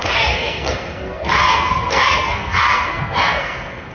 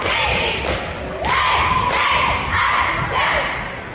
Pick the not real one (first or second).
first